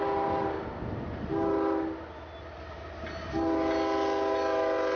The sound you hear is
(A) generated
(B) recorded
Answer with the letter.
B